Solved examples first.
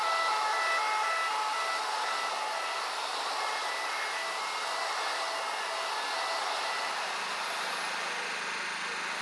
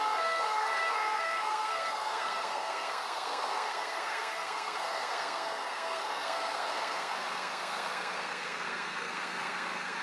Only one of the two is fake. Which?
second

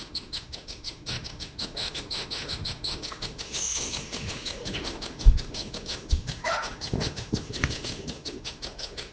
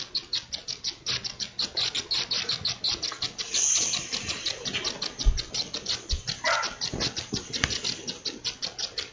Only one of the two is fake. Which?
first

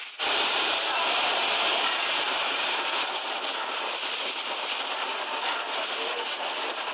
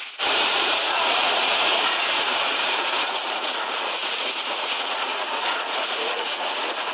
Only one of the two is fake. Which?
second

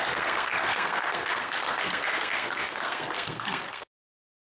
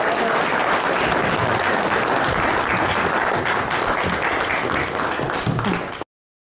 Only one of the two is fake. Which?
first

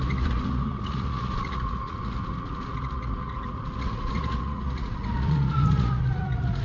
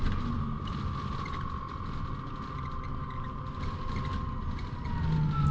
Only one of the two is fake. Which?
first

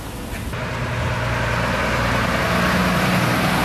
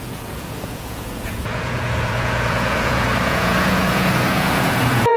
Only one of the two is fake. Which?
second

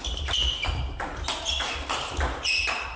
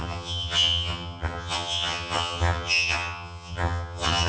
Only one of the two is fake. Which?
second